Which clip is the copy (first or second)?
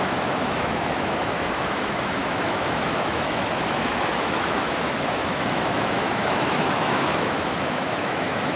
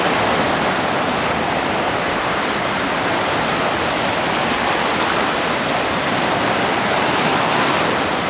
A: first